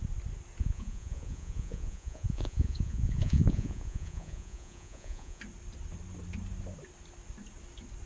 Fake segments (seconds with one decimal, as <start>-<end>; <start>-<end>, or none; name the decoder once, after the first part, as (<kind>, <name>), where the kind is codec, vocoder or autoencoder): 0.6-5.4 (vocoder, Vocos)